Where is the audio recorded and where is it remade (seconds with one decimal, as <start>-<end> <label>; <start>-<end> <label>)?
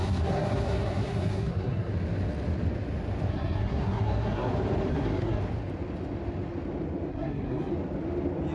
0.0-1.9 remade; 1.9-3.3 recorded; 3.3-4.5 remade; 4.5-4.9 recorded; 4.9-5.4 remade; 5.4-7.1 recorded; 7.1-7.7 remade; 7.7-8.5 recorded